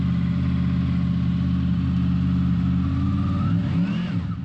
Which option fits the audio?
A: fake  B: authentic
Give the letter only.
B